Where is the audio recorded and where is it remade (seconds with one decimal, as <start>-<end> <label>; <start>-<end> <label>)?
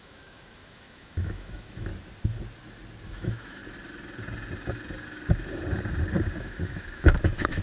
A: 0.0-1.9 remade; 1.9-3.1 recorded; 3.1-3.6 remade; 3.6-6.4 recorded; 6.4-7.6 remade